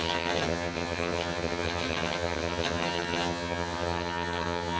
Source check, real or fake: fake